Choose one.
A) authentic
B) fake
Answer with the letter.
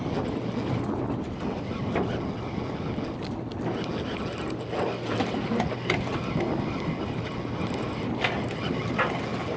A